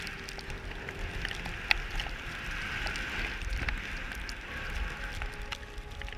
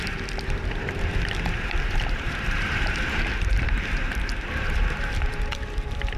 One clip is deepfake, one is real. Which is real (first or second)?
first